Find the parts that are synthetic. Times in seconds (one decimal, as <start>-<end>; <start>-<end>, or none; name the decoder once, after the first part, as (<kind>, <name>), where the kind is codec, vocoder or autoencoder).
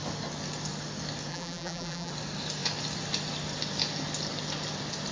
1.3-2.1 (vocoder, BigVGAN v2)